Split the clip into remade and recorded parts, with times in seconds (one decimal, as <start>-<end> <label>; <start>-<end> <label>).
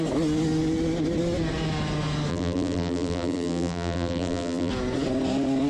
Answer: 0.0-2.3 recorded; 2.3-4.7 remade; 4.7-5.7 recorded